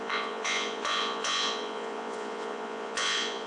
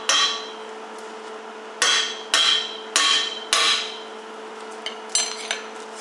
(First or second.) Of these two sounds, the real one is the second